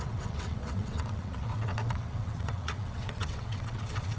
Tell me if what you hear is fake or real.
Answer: fake